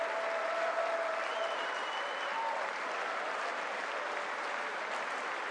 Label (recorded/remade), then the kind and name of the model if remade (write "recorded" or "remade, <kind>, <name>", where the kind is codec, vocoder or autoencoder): recorded